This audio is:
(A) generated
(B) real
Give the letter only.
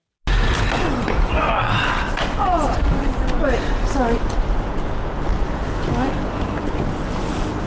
B